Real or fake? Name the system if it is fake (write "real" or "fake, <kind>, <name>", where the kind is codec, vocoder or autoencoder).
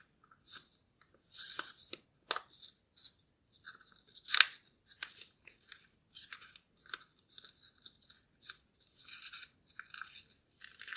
real